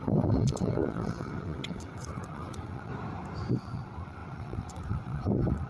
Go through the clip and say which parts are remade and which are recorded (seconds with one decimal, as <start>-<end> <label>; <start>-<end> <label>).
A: 0.0-2.9 remade; 2.9-3.5 recorded; 3.5-5.7 remade